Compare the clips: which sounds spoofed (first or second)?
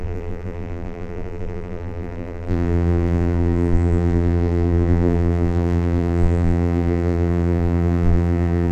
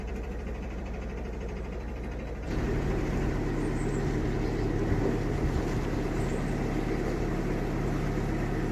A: first